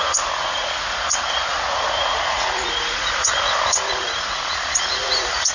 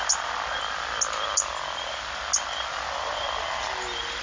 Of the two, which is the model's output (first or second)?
first